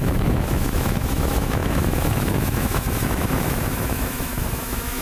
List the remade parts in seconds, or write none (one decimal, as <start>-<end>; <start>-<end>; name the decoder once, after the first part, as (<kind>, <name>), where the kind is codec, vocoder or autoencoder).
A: 0.0-5.0 (autoencoder, DAC-VAE)